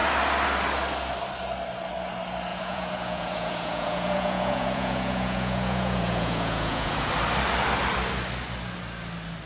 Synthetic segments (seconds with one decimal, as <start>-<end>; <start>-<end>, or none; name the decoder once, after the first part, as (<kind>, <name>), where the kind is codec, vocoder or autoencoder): 2.5-7.1 (vocoder, Vocos)

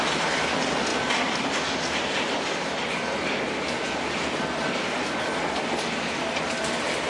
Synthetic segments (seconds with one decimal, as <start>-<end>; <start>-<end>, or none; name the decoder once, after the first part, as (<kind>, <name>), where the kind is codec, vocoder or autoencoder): none